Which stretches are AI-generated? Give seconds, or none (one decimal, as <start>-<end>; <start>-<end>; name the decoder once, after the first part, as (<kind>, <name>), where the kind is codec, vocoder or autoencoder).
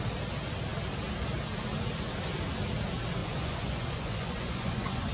3.2-5.1 (vocoder, Vocos)